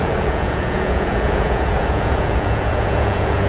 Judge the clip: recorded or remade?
remade